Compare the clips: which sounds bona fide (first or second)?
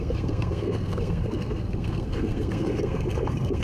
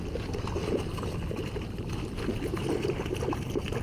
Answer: second